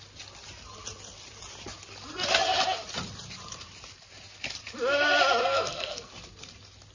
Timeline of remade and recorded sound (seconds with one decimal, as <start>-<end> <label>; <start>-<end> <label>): 0.0-5.4 recorded; 5.4-6.1 remade; 6.1-6.9 recorded